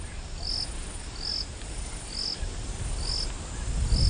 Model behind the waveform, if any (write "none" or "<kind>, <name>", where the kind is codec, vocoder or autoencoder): none